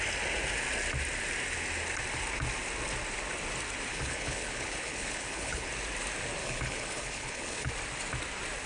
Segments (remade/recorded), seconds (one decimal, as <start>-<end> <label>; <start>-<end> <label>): 0.0-3.9 recorded; 3.9-5.7 remade; 5.7-6.4 recorded; 6.4-7.7 remade; 7.7-8.7 recorded